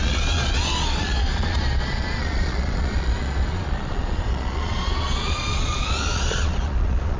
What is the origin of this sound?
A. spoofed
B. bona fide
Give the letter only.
A